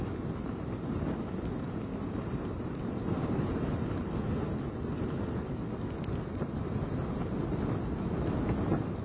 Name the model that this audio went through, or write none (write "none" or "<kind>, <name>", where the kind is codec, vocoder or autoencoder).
none